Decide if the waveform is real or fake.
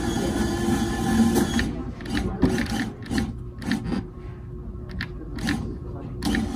real